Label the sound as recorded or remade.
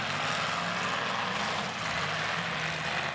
recorded